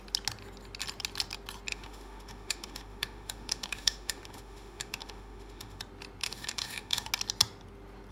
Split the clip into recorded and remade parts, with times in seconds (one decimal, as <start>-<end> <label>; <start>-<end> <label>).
0.0-1.7 recorded; 1.7-5.8 remade; 5.8-6.2 recorded; 6.2-7.1 remade; 7.1-8.1 recorded